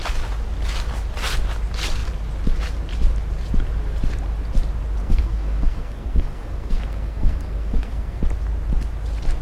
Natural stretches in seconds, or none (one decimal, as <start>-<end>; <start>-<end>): 0.0-5.0; 8.2-9.4